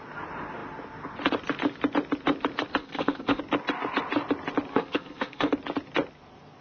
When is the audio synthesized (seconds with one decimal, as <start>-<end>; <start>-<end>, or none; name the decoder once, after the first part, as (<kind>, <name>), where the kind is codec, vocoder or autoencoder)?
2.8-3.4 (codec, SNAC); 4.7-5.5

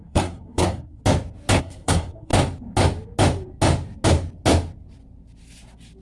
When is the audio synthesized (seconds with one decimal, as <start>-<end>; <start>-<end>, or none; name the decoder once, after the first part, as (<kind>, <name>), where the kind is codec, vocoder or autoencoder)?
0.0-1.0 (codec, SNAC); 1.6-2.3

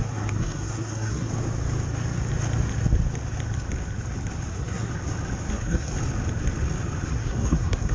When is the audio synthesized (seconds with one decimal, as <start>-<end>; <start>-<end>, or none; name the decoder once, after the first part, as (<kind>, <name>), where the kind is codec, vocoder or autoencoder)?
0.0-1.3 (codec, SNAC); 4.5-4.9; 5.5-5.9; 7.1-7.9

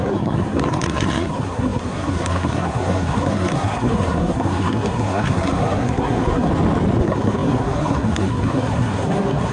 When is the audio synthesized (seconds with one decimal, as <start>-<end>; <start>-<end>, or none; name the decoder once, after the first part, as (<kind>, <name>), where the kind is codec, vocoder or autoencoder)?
0.0-6.5 (codec, SNAC); 7.0-9.5

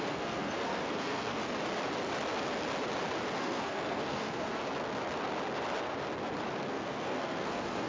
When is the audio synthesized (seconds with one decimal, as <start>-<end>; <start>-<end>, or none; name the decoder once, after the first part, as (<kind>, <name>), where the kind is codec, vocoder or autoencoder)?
0.0-1.4 (codec, SNAC); 3.4-4.6; 6.7-7.9